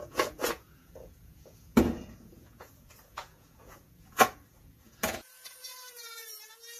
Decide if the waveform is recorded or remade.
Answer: remade